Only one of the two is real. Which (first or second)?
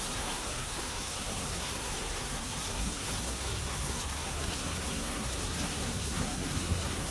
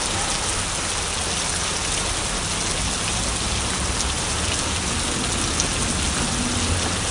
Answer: second